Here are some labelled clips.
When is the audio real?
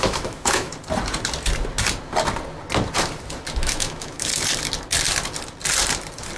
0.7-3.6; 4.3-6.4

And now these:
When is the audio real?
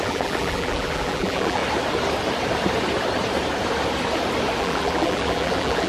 1.6-4.6